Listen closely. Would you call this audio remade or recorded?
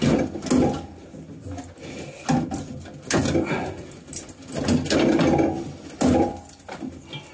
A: recorded